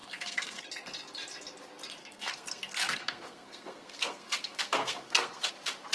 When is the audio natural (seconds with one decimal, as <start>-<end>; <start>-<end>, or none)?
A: 0.6-2.0; 5.5-5.9